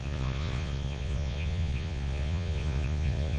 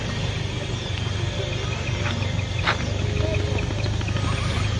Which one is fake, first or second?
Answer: first